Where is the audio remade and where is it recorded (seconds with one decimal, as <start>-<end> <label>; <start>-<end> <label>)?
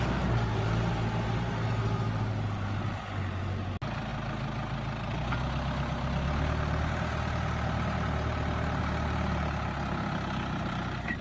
0.0-11.2 recorded